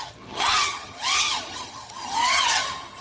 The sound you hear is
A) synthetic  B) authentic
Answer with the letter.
A